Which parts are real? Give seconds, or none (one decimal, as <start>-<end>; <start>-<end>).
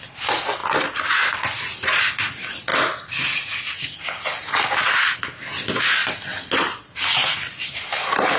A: 0.0-8.4